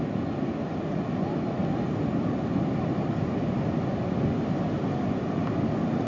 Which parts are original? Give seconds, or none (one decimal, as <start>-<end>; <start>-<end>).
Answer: 0.0-6.1